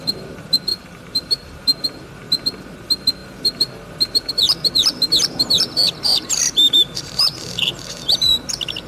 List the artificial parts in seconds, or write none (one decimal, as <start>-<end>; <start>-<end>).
0.7-1.6; 6.1-8.5